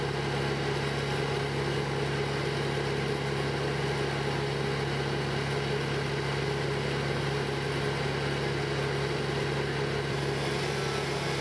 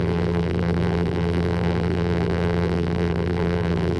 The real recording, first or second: first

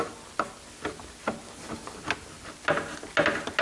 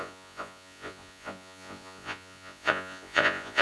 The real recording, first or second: first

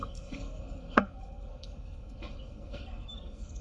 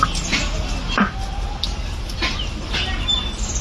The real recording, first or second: second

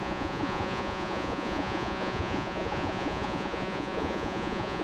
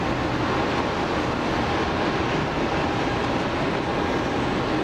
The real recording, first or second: second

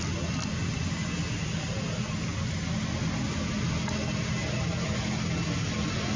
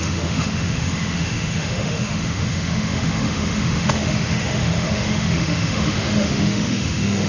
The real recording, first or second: first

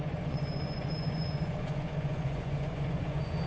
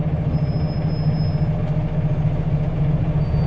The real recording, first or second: second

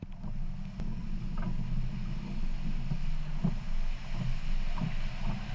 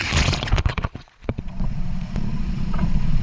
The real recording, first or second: first